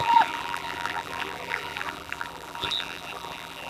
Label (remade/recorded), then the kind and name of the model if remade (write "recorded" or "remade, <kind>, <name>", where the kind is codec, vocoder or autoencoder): remade, vocoder, BigVGAN v2